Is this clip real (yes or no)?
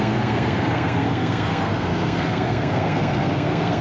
no